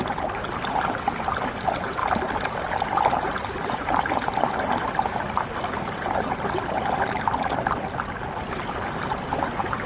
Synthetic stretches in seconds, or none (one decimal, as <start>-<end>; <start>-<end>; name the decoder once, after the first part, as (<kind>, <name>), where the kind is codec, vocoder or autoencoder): none